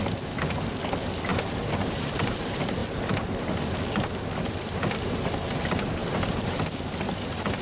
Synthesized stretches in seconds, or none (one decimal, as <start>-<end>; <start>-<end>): 1.3-2.4; 6.0-6.6